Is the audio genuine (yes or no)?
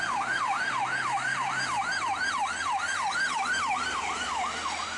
yes